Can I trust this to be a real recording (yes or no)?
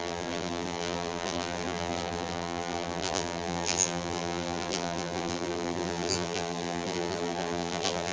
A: no